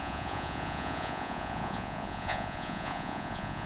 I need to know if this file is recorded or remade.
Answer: remade